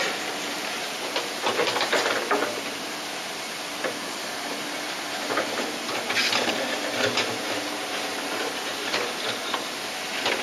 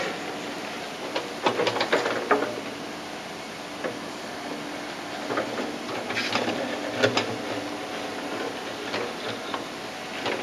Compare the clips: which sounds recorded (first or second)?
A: second